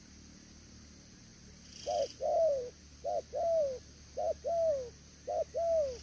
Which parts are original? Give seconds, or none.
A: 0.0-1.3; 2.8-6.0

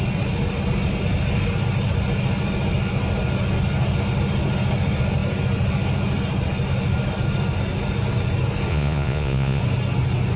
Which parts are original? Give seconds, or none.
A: 0.0-8.7; 9.6-10.4

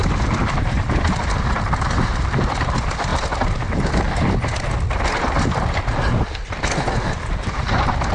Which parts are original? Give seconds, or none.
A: 3.1-7.3

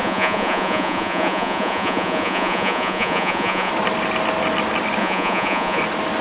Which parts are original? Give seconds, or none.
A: 3.7-5.0; 5.8-6.2

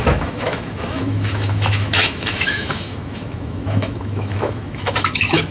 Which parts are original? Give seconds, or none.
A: none

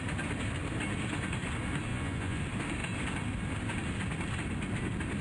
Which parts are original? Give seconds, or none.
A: 0.0-1.9; 2.4-5.2